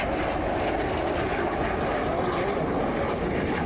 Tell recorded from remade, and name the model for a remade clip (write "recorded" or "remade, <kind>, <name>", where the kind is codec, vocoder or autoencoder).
recorded